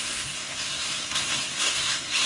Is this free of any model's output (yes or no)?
no